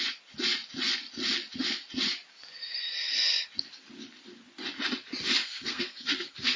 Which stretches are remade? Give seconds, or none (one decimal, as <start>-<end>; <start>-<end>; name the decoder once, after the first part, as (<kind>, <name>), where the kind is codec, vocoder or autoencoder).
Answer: 5.4-6.6 (codec, SNAC)